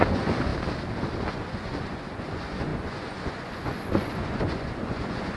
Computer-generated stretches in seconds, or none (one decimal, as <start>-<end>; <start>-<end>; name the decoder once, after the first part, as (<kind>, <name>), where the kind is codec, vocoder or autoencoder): 0.0-0.5 (vocoder, Vocos); 1.3-5.4